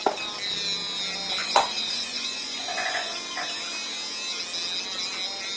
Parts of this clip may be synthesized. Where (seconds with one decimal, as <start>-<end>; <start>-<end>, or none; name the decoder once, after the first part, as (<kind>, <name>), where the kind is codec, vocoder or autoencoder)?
1.4-3.1 (vocoder, Vocos)